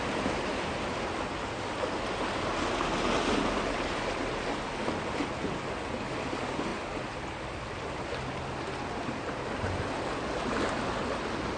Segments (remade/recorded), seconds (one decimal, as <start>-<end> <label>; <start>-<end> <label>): 0.0-6.7 recorded; 6.7-7.6 remade; 7.6-11.6 recorded